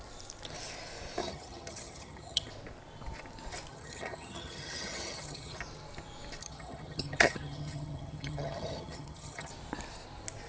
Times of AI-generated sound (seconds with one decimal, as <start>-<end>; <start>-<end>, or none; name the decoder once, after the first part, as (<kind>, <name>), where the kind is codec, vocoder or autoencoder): 1.2-2.5 (vocoder, HiFi-GAN); 3.7-5.6; 6.4-9.5